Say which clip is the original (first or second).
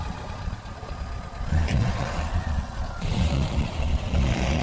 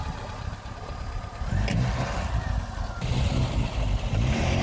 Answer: second